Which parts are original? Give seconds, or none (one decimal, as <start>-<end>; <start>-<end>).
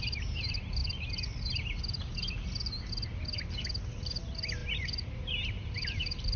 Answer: 0.8-3.9